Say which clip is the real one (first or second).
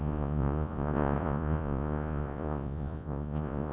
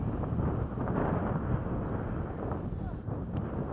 second